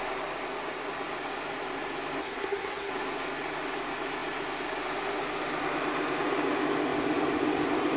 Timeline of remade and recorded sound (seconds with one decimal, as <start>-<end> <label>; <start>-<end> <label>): 0.0-2.2 recorded; 2.2-2.9 remade; 2.9-8.0 recorded